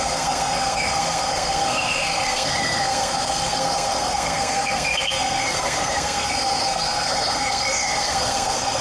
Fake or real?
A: fake